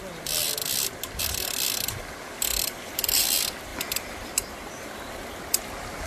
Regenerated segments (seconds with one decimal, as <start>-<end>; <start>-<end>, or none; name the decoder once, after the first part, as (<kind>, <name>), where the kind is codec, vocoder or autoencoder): 0.6-1.2 (vocoder, BigVGAN v2); 2.5-3.2; 3.7-5.3